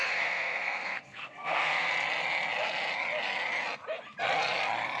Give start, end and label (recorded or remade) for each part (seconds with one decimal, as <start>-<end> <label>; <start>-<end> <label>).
0.0-1.9 remade; 1.9-5.0 recorded